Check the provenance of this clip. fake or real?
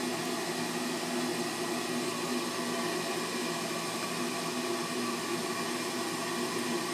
real